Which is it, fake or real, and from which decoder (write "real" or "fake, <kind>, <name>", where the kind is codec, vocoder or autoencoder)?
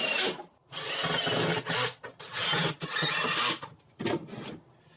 real